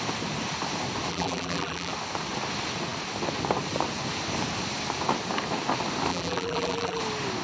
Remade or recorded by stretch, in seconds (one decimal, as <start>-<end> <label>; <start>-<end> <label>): 0.0-1.1 recorded; 1.1-1.9 remade; 1.9-6.1 recorded; 6.1-7.0 remade; 7.0-7.4 recorded

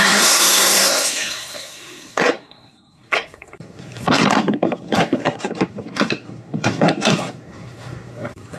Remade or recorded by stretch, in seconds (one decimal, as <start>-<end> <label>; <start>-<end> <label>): 0.0-8.6 remade

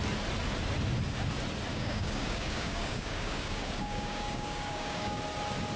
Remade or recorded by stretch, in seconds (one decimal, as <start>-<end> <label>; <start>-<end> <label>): 0.0-1.7 recorded; 1.7-5.2 remade; 5.2-5.8 recorded

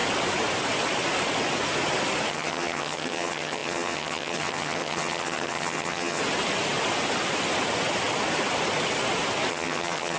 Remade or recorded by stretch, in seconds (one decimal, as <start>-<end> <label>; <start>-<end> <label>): 0.0-2.3 recorded; 2.3-6.2 remade; 6.2-9.5 recorded; 9.5-10.2 remade

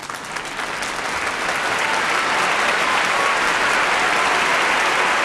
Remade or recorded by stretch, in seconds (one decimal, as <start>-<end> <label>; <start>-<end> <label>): 0.0-5.2 recorded

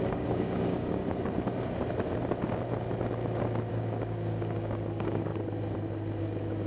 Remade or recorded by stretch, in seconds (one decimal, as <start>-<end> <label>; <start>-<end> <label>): 0.0-1.0 remade; 1.0-3.7 recorded; 3.7-5.3 remade; 5.3-6.2 recorded; 6.2-6.7 remade